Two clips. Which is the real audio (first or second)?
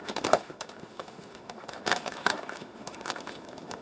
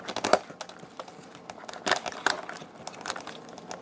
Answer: second